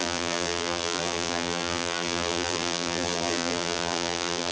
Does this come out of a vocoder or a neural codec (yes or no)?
yes